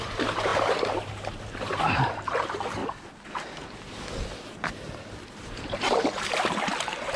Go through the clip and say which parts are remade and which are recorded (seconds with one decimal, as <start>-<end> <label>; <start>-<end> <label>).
0.0-2.8 remade; 2.8-5.4 recorded; 5.4-7.2 remade